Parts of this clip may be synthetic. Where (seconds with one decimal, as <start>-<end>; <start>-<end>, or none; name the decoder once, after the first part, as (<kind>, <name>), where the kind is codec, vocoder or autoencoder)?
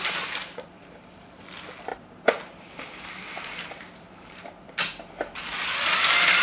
0.4-1.4 (vocoder, BigVGAN v2); 1.9-5.4